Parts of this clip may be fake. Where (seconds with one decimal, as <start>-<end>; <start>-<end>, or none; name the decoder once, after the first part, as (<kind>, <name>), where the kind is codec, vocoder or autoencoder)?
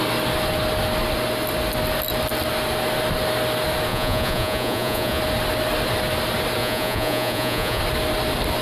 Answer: 3.9-5.2 (vocoder, Vocos); 6.6-7.8